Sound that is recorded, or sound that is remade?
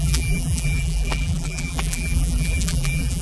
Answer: remade